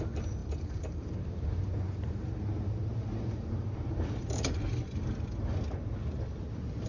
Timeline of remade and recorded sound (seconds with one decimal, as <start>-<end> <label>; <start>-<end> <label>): 0.0-0.4 recorded; 0.4-4.5 remade; 4.5-6.9 recorded